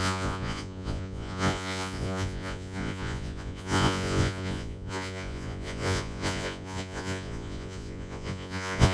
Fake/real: fake